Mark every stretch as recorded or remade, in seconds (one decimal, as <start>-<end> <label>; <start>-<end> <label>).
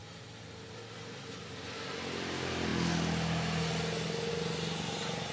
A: 0.0-5.3 recorded